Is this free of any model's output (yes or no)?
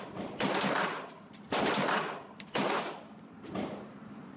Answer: no